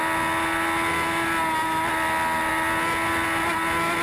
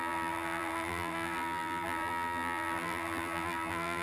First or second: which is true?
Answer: first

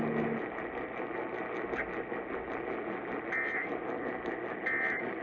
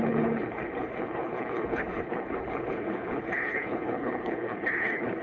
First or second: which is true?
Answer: first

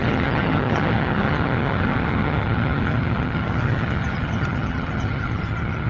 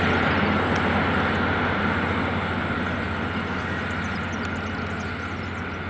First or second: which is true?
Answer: second